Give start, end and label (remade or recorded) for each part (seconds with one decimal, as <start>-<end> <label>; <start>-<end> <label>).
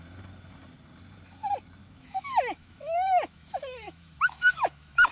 0.0-1.8 recorded; 1.8-5.1 remade